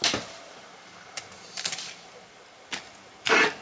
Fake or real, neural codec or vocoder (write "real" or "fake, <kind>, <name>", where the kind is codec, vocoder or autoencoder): real